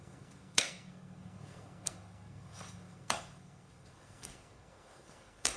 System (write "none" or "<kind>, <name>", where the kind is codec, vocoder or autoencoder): codec, SNAC